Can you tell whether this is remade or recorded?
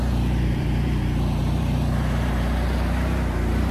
remade